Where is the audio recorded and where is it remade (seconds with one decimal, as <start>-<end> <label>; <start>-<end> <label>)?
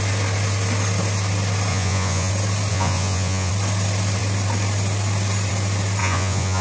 0.0-1.7 recorded; 1.7-2.3 remade; 2.3-2.7 recorded; 2.7-3.5 remade; 3.5-6.0 recorded; 6.0-6.6 remade